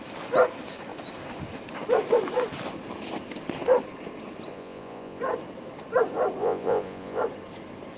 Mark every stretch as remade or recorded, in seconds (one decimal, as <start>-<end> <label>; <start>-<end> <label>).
0.0-4.5 recorded; 4.5-5.2 remade; 5.2-6.4 recorded; 6.4-7.2 remade; 7.2-8.0 recorded